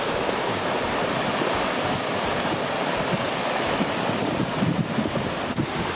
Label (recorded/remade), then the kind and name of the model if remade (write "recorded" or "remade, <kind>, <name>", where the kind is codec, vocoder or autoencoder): recorded